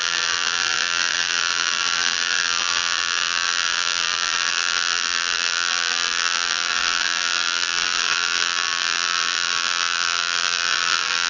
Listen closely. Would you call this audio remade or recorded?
remade